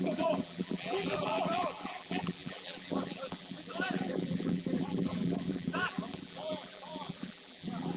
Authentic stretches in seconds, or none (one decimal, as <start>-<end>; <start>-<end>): none